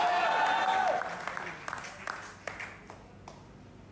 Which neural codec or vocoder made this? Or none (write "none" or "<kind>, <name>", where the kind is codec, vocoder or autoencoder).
none